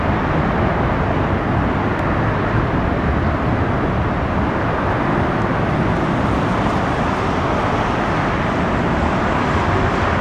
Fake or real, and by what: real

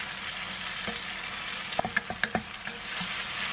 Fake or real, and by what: real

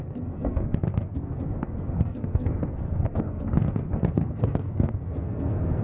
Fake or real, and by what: fake, codec, SNAC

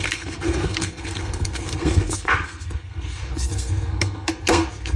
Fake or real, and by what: fake, codec, SNAC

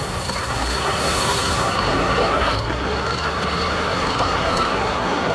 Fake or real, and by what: fake, codec, SNAC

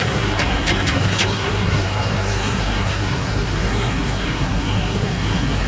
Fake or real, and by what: fake, codec, SNAC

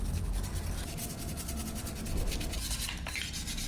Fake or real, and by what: real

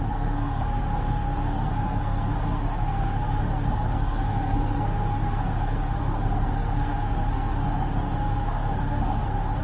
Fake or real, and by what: fake, codec, SNAC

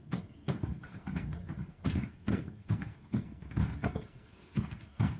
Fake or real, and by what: fake, codec, SNAC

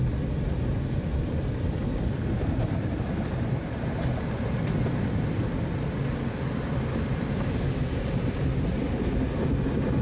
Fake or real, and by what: real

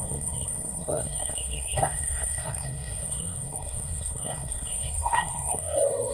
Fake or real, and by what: fake, codec, SNAC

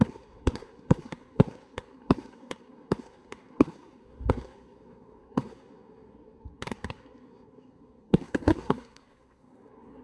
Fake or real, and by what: fake, codec, SNAC